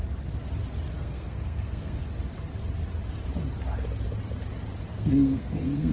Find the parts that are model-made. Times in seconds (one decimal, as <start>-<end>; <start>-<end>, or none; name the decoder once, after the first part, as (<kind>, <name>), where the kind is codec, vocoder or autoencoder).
1.0-2.0 (codec, SNAC); 4.9-5.9